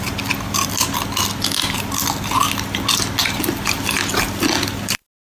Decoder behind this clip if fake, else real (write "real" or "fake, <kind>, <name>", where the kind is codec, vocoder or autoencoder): real